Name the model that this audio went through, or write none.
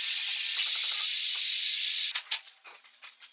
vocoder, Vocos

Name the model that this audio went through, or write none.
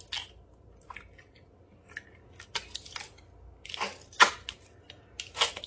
none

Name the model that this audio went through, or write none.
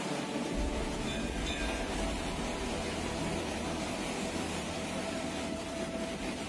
vocoder, BigVGAN v2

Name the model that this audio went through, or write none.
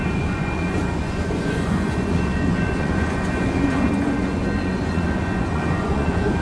vocoder, Vocos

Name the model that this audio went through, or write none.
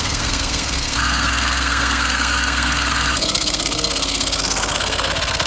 codec, SNAC